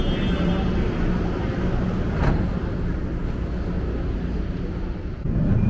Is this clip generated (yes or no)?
no